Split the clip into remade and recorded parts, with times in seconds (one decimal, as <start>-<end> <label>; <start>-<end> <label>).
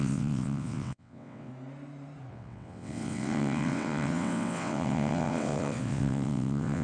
0.0-1.5 remade; 1.5-2.3 recorded; 2.3-6.8 remade